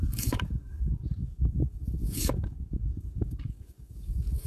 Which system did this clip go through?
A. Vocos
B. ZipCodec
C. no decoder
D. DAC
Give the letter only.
D